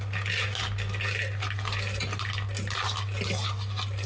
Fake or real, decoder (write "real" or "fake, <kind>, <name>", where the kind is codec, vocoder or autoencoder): real